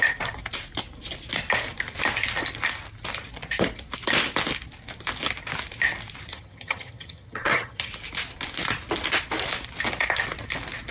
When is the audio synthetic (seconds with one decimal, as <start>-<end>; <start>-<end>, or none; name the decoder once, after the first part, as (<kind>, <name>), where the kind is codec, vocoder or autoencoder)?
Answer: 6.3-7.9 (vocoder, HiFi-GAN)